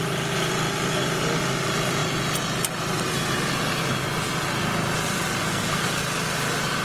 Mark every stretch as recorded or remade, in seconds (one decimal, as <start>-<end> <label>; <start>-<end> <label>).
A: 0.0-5.4 recorded; 5.4-6.0 remade; 6.0-6.8 recorded